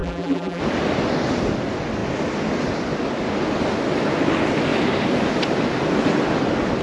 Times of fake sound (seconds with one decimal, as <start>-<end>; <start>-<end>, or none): 0.0-0.6